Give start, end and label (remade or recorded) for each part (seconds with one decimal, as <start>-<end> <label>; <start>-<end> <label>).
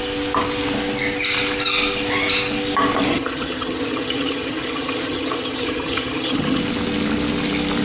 0.0-3.1 recorded; 3.1-6.6 remade; 6.6-7.8 recorded